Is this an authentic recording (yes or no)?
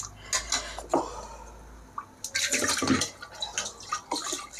yes